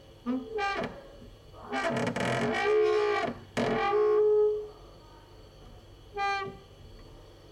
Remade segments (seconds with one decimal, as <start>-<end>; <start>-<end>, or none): 0.5-1.5